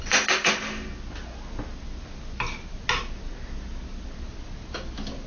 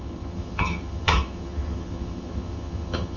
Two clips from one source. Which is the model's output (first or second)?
second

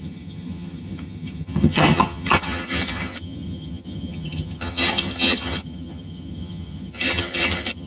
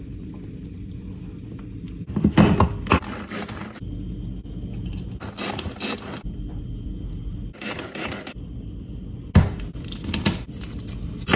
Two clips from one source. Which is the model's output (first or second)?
first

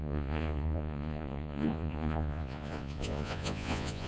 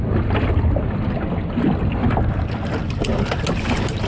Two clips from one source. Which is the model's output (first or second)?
first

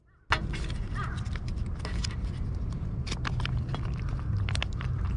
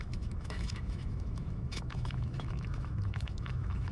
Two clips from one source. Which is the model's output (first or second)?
second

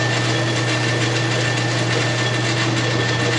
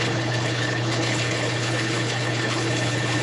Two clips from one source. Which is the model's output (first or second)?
second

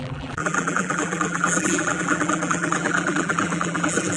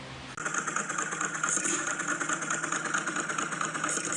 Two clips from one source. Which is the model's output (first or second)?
first